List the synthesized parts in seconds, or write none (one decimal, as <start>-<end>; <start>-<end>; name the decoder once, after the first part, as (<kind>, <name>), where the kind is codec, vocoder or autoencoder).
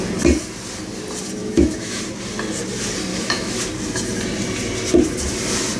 1.4-2.0 (autoencoder, DAC-VAE); 3.1-3.6